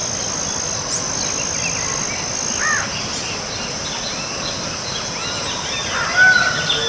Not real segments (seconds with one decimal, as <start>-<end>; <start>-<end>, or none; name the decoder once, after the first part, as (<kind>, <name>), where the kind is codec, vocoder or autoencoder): none